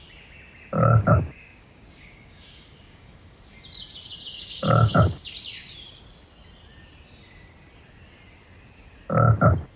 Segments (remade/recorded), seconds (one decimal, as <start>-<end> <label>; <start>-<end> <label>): 0.0-0.8 recorded; 0.8-3.4 remade; 3.4-4.3 recorded; 4.3-5.1 remade; 5.1-9.8 recorded